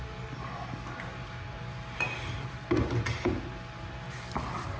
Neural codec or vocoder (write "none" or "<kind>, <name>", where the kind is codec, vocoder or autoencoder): none